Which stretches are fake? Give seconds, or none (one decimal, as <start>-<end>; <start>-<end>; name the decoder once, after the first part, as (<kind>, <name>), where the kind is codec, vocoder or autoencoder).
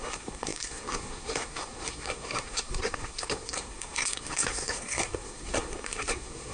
0.0-6.5 (codec, SNAC)